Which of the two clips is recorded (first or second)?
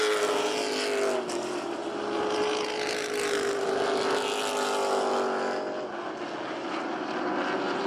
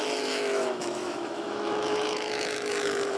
first